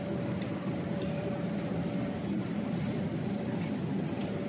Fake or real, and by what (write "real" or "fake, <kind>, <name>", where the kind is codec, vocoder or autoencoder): fake, vocoder, BigVGAN v2